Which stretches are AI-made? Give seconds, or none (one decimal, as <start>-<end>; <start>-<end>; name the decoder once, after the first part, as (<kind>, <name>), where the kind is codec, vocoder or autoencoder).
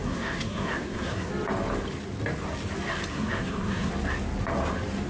0.0-1.3 (codec, SNAC); 3.1-3.9